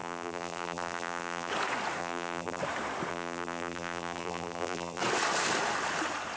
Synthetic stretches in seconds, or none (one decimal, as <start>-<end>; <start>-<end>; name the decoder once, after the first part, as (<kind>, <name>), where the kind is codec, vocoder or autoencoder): 0.0-1.5 (vocoder, BigVGAN v2); 2.0-2.6; 3.1-5.0